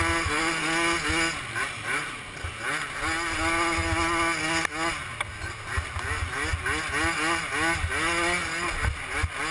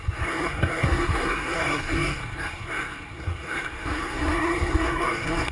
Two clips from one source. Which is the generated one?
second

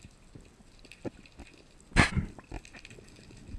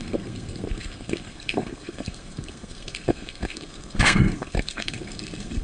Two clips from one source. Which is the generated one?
second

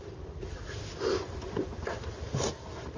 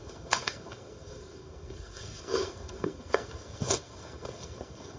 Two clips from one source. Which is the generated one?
second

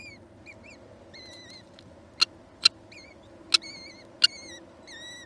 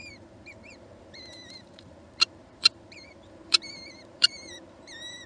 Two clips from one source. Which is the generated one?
second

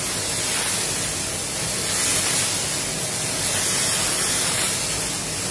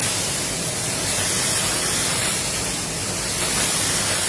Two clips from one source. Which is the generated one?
second